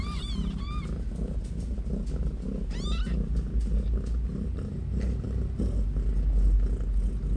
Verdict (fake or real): real